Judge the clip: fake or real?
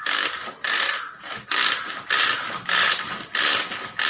real